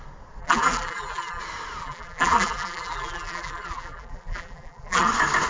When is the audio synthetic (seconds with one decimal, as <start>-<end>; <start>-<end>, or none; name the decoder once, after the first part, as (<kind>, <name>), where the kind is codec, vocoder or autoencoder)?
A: 0.4-1.4 (vocoder, BigVGAN v2); 1.8-5.1